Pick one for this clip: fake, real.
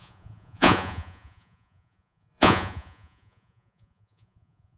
fake